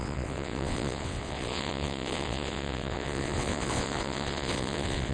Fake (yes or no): yes